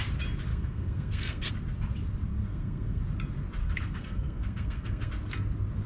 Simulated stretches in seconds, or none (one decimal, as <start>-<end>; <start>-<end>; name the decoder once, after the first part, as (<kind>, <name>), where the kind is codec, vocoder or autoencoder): 0.5-1.5 (codec, SNAC); 2.3-3.0; 3.6-5.1